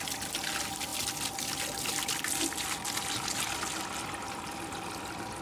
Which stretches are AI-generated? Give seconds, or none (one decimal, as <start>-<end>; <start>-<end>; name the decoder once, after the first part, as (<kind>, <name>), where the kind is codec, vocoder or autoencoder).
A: none